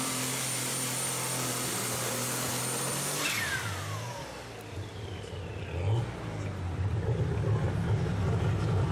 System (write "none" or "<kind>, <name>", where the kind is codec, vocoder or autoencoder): none